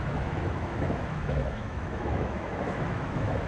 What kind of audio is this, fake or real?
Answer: fake